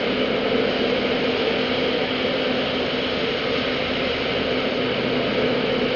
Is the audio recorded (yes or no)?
yes